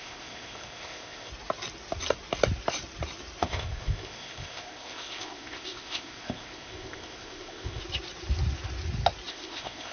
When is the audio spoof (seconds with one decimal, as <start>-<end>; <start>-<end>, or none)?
0.0-1.3; 3.4-7.8; 9.3-9.9

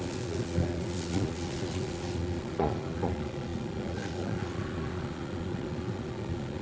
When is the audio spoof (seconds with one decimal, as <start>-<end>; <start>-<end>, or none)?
0.0-6.6

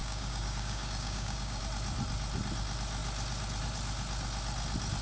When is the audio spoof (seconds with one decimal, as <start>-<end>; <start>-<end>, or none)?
0.0-1.6

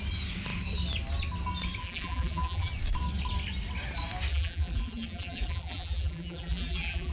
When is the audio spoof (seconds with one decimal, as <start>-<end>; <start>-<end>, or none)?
1.8-2.7; 4.3-7.1